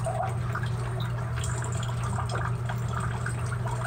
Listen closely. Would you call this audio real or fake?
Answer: real